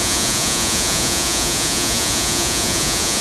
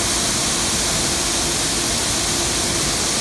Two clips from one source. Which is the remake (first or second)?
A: first